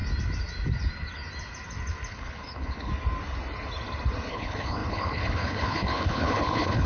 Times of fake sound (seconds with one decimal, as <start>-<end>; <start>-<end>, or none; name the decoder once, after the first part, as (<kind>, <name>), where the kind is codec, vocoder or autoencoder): 2.1-2.9 (codec, HILCodec); 4.3-6.9